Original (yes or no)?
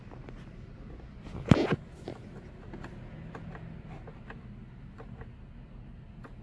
yes